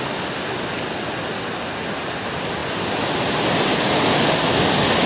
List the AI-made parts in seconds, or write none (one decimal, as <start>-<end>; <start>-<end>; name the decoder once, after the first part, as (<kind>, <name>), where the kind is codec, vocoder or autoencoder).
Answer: none